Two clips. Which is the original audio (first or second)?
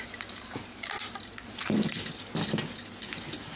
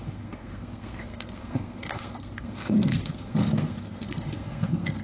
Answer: first